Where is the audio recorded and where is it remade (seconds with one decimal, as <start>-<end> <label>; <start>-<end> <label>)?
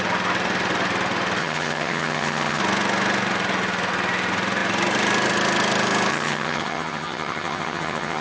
0.0-1.4 recorded; 1.4-2.6 remade; 2.6-6.1 recorded; 6.1-8.2 remade